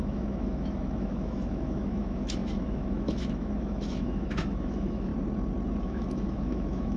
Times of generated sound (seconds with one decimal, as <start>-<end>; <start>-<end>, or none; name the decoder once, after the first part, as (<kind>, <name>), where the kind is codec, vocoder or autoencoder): 0.0-5.1 (autoencoder, DAC-VAE); 5.8-7.0

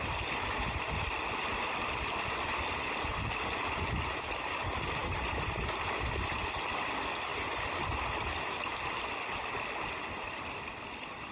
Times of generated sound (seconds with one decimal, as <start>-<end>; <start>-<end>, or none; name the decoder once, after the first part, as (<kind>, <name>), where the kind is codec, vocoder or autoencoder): none

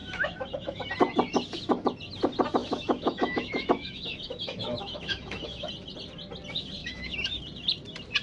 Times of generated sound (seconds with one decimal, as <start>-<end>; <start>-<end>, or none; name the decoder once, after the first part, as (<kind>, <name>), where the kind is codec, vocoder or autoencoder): 0.0-0.9 (autoencoder, DAC-VAE); 2.6-5.7; 6.8-7.3

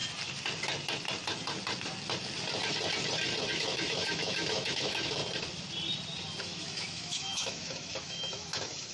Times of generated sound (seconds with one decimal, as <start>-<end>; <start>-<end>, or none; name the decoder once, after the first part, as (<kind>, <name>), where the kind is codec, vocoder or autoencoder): 3.5-5.2 (autoencoder, DAC-VAE); 6.4-8.9

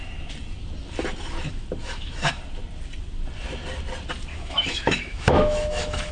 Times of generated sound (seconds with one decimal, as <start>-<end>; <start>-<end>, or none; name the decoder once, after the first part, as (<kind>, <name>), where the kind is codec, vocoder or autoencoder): 1.8-2.4 (autoencoder, DAC-VAE); 4.3-6.1

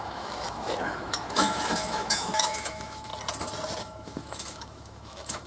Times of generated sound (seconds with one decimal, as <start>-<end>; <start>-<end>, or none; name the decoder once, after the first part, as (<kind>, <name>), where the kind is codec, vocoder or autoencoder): 0.0-3.1 (autoencoder, DAC-VAE); 3.8-5.5

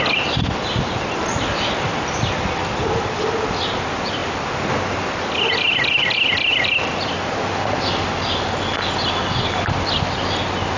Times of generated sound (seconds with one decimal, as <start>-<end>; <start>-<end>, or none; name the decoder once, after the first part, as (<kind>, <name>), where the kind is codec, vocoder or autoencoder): none

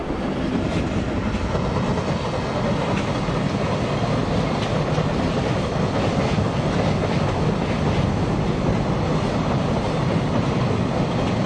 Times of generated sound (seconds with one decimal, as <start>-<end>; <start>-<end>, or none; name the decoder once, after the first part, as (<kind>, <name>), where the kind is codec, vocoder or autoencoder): none